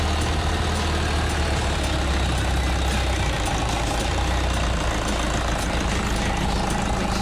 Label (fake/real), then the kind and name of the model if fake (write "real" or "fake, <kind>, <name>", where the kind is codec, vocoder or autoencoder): real